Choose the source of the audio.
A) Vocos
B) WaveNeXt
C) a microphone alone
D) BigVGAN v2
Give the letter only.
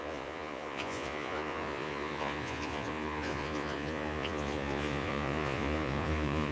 A